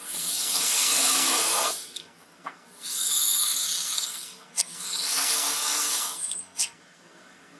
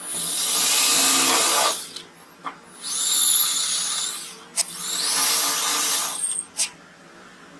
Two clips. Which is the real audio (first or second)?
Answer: second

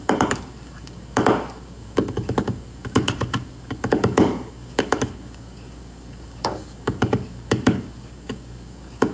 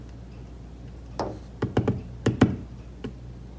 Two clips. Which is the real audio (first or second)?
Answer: second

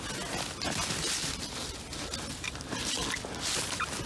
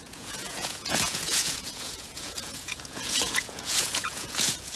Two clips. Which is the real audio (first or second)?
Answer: first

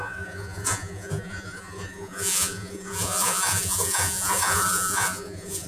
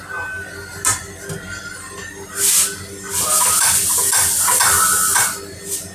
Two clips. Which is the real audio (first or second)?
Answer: second